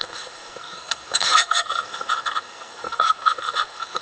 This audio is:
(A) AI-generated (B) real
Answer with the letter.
A